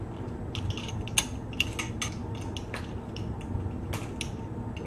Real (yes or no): yes